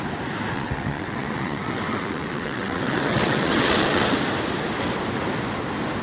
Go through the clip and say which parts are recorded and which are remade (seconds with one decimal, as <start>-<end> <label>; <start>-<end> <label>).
0.0-0.5 recorded; 0.5-4.1 remade; 4.1-6.0 recorded

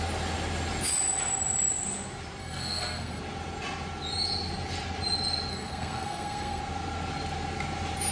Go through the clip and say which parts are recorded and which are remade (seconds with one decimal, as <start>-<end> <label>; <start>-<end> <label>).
0.0-2.4 recorded; 2.4-3.2 remade; 3.2-5.5 recorded; 5.5-6.6 remade; 6.6-8.1 recorded

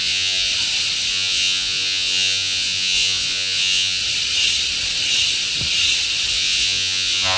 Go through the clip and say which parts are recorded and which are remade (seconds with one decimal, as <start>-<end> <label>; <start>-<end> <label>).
0.0-0.5 remade; 0.5-1.1 recorded; 1.1-4.0 remade; 4.0-6.3 recorded; 6.3-7.4 remade

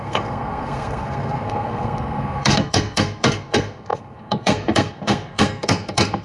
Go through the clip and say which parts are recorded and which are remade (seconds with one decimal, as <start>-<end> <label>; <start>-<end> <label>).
0.0-6.2 remade

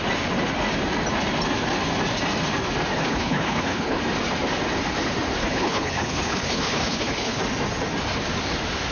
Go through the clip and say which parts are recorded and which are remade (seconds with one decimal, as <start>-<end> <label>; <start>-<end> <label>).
0.0-2.9 recorded; 2.9-4.0 remade; 4.0-5.4 recorded; 5.4-7.4 remade; 7.4-8.9 recorded

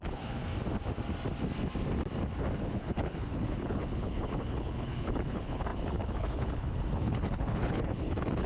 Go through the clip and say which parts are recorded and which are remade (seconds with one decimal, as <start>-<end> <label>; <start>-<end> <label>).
0.0-0.4 remade; 0.4-2.7 recorded; 2.7-8.5 remade

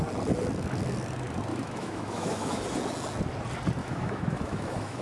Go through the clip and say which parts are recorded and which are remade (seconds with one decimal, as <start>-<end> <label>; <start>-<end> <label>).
0.0-1.5 recorded; 1.5-2.6 remade; 2.6-3.8 recorded; 3.8-5.0 remade